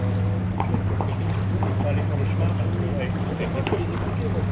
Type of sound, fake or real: real